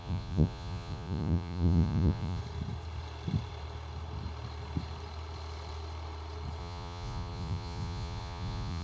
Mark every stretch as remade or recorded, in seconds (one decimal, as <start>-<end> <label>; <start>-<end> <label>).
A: 0.0-2.4 remade; 2.4-6.6 recorded; 6.6-8.8 remade

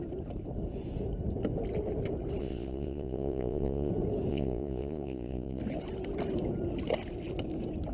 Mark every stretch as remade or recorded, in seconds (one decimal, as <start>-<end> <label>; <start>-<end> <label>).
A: 0.0-2.4 recorded; 2.4-3.9 remade; 3.9-4.3 recorded; 4.3-5.6 remade; 5.6-7.9 recorded